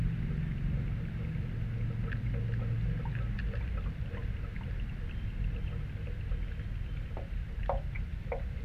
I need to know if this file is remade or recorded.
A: recorded